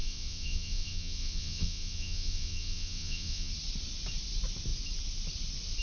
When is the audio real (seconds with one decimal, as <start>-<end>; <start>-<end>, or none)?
3.5-5.8